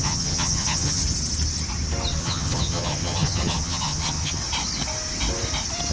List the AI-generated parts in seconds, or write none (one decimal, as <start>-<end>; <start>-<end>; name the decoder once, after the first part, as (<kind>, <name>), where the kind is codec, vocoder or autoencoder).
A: 0.0-1.0 (vocoder, HiFi-GAN); 2.2-4.4